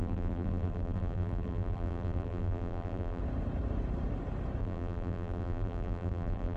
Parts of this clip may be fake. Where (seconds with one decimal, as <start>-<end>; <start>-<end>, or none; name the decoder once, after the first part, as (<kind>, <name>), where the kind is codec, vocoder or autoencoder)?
0.0-3.2 (vocoder, BigVGAN v2); 4.6-6.6